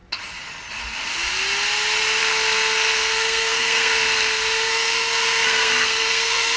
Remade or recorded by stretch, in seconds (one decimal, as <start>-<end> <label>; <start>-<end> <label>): 0.0-2.2 recorded; 2.2-6.6 remade